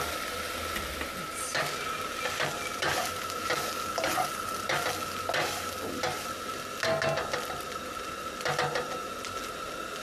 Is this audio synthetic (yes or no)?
no